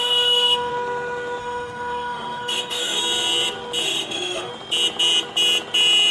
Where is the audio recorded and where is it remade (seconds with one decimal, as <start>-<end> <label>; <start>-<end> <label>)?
0.0-0.7 remade; 0.7-1.4 recorded; 1.4-3.0 remade; 3.0-3.8 recorded; 3.8-4.5 remade; 4.5-6.1 recorded